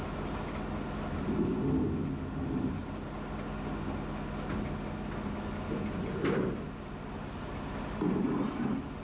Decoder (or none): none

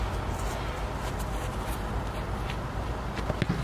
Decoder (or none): none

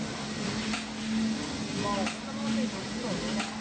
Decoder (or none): none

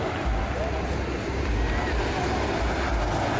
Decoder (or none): none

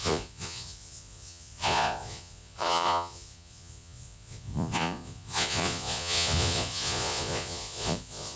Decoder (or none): vocoder, Vocos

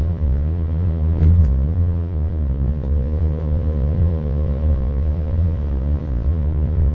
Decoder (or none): vocoder, Vocos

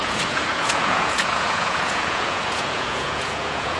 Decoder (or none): vocoder, Vocos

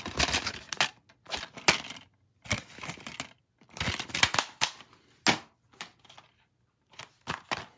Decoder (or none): none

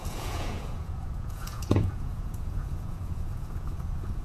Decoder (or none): vocoder, Vocos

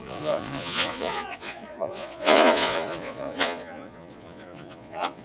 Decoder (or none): vocoder, Vocos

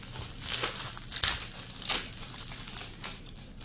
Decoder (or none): none